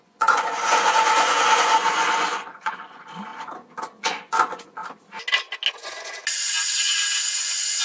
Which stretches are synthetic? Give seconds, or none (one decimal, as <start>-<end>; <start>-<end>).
0.0-3.3; 4.0-4.8; 5.7-6.2; 6.8-7.8